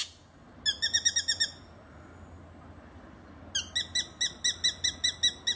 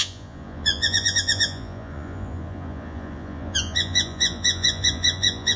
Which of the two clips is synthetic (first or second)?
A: second